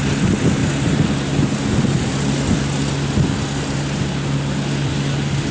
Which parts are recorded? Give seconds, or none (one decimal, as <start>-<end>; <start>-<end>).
0.0-5.5